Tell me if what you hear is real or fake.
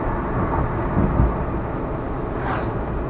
real